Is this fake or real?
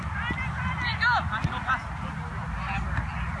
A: real